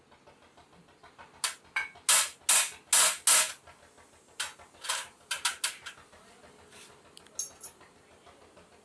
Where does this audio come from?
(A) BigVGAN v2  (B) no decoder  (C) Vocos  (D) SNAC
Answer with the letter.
B